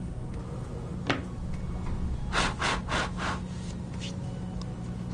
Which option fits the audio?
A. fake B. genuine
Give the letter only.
B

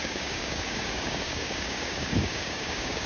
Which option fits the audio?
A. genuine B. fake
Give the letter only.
B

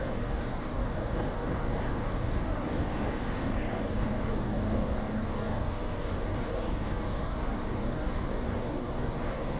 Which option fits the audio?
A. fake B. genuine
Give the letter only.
A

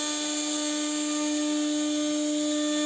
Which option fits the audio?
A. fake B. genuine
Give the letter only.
B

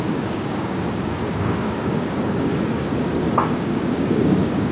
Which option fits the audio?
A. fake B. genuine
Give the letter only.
A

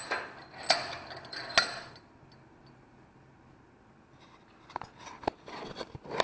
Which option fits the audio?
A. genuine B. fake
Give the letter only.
A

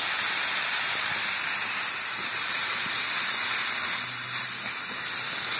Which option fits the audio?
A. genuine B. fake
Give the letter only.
A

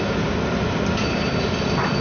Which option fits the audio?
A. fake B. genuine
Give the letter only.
B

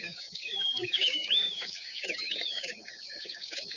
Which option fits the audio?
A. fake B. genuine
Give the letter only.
A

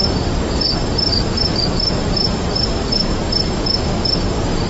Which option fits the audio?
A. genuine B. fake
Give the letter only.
A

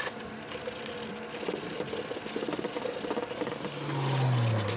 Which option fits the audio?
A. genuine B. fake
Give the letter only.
A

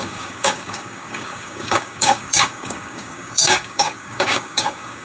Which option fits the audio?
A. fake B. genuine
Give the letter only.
A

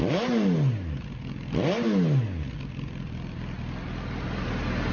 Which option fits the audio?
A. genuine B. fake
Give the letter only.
A